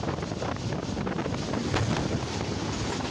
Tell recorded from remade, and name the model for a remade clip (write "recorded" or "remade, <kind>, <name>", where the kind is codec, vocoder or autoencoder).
recorded